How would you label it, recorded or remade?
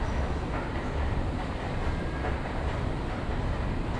recorded